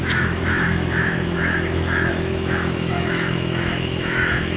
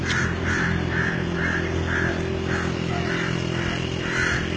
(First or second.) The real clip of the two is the second